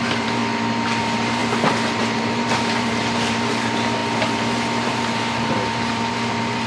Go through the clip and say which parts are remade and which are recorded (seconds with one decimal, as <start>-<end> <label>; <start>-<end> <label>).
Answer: 0.0-0.4 remade; 0.4-1.0 recorded; 1.0-1.4 remade; 1.4-2.0 recorded; 2.0-6.7 remade